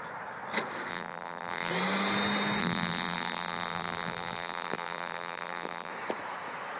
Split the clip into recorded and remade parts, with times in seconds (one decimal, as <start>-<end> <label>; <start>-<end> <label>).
0.0-0.9 recorded; 0.9-1.7 remade; 1.7-2.6 recorded; 2.6-5.9 remade; 5.9-6.8 recorded